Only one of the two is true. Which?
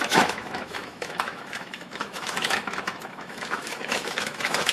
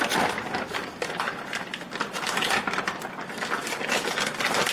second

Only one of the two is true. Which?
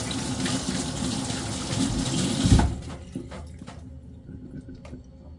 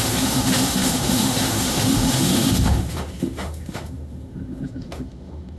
first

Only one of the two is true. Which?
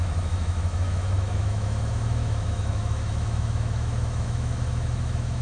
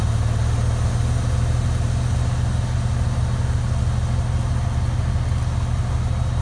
second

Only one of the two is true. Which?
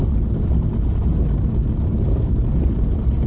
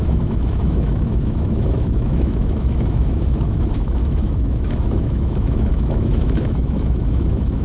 first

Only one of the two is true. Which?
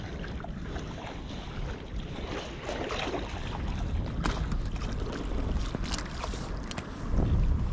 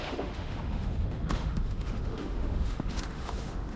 first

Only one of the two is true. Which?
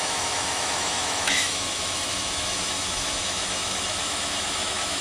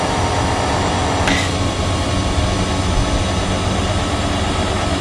second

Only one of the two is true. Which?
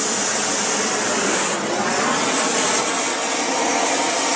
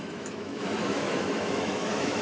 first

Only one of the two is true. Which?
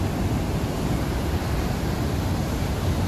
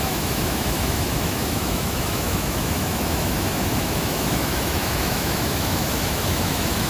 first